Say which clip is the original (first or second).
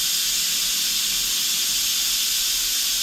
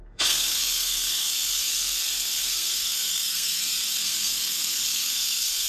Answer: first